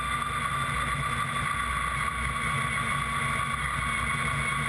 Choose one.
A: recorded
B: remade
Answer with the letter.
A